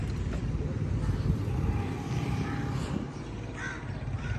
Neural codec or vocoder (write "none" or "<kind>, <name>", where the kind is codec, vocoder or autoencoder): none